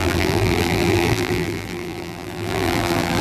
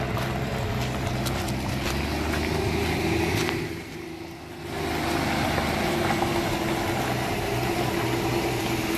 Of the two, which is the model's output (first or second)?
first